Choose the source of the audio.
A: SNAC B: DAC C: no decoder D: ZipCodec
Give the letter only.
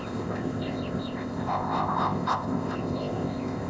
D